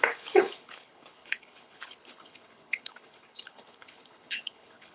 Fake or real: fake